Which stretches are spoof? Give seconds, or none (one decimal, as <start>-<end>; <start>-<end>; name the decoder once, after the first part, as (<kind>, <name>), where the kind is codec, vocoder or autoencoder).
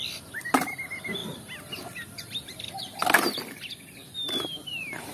0.0-1.2 (vocoder, BigVGAN v2); 3.3-5.1